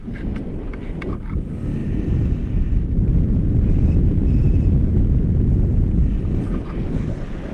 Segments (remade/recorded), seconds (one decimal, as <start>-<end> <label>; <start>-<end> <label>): 0.0-7.5 recorded